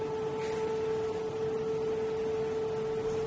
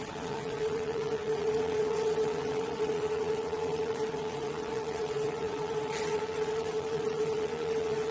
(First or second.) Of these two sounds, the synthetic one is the second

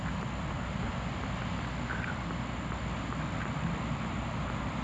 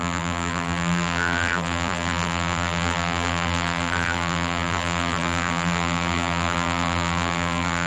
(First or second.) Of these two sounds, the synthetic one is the second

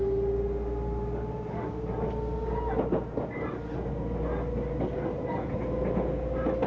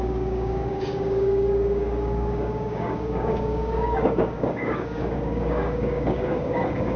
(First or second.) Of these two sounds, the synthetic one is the second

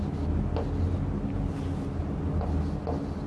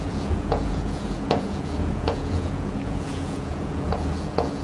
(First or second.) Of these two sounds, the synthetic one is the second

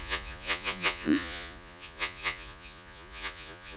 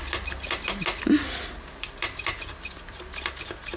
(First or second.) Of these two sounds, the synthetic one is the first